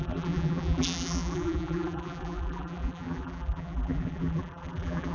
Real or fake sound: fake